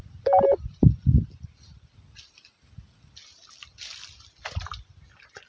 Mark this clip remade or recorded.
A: recorded